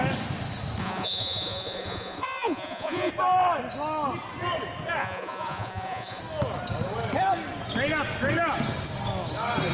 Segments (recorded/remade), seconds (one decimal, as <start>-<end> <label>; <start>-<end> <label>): 0.0-0.8 recorded; 0.8-3.1 remade; 3.1-5.0 recorded; 5.0-6.2 remade; 6.2-9.7 recorded